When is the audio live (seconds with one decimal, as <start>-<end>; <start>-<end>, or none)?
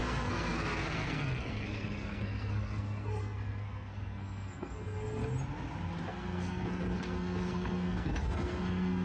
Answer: 5.2-6.1